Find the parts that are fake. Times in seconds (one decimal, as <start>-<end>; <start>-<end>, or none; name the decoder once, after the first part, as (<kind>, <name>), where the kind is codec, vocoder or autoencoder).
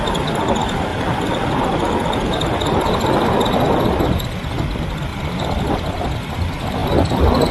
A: 0.9-1.5 (vocoder, BigVGAN v2); 5.1-5.6